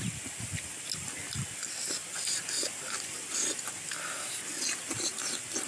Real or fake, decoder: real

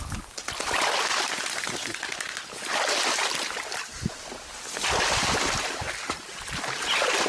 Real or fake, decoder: real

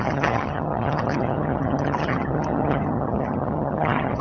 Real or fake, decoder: fake, vocoder, HiFi-GAN